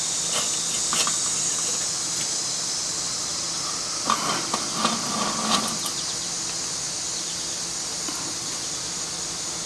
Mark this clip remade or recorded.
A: recorded